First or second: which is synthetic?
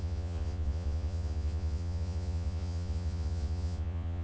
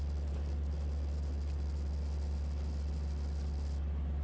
first